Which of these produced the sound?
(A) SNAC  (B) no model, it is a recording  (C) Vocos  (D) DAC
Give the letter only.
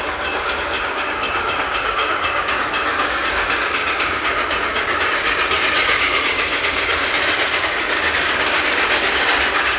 D